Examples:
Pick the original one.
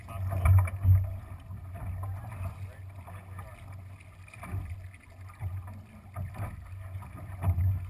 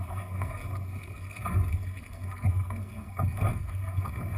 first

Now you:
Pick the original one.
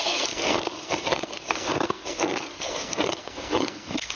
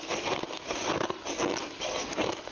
second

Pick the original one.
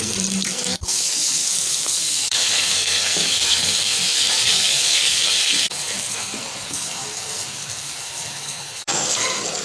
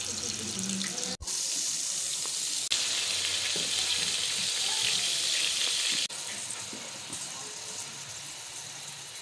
second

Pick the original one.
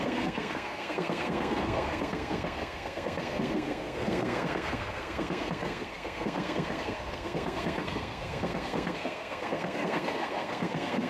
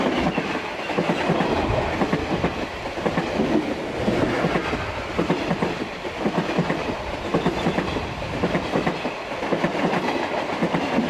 second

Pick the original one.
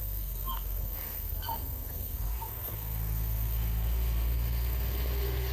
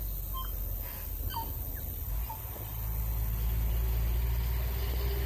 second